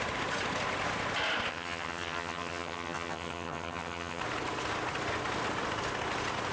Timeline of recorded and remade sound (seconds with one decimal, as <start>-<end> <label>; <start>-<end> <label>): 0.0-1.5 recorded; 1.5-4.2 remade; 4.2-6.5 recorded